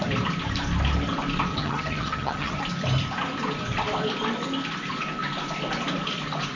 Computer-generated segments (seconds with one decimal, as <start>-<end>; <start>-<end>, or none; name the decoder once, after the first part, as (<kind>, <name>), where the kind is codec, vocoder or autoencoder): 1.5-2.6 (vocoder, HiFi-GAN)